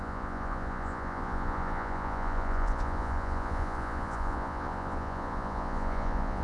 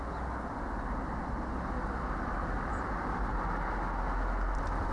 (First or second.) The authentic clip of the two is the second